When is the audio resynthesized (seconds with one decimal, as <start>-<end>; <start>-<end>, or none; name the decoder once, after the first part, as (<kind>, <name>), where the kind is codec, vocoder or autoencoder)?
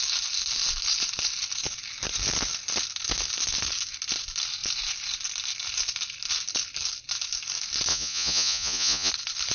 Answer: 7.9-9.1 (vocoder, Vocos)